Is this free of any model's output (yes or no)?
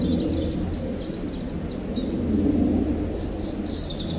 yes